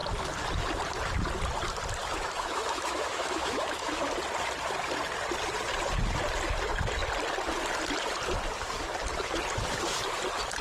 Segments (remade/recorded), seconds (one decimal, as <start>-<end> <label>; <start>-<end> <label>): 0.0-2.0 recorded; 2.0-4.0 remade; 4.0-10.6 recorded